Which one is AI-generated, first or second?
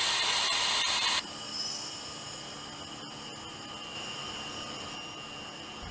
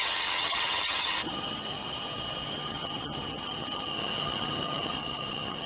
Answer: second